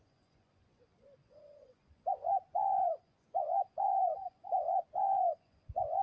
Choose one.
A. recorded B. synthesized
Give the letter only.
B